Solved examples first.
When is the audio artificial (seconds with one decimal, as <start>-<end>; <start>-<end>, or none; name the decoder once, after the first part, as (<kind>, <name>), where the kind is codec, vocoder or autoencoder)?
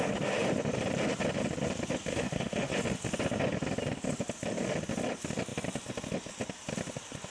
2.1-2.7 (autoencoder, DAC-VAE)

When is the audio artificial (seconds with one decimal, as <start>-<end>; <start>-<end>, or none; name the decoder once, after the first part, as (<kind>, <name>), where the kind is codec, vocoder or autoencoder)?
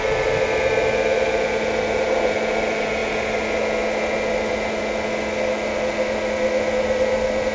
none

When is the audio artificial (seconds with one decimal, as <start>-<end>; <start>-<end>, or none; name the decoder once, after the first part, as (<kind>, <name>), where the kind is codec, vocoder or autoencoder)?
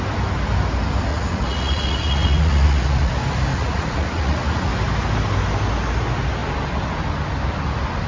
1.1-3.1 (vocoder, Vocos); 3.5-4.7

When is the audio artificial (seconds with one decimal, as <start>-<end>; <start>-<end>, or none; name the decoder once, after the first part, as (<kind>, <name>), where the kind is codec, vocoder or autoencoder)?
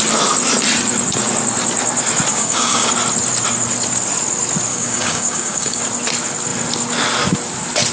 2.3-2.9 (codec, DAC); 4.7-5.8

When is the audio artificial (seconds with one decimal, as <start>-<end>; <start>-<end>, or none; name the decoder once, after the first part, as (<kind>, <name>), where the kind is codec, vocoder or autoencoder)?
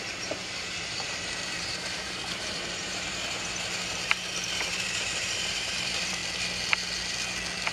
0.0-6.2 (vocoder, BigVGAN v2)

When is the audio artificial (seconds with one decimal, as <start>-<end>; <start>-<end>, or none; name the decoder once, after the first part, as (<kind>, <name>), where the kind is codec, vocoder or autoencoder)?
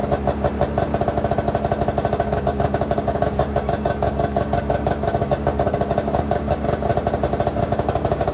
2.1-6.9 (codec, DAC); 7.6-8.3